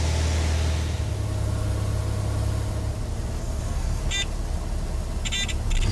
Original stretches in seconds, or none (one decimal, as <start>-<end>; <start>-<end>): 0.0-3.4; 4.0-5.9